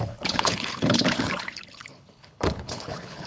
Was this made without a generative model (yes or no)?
no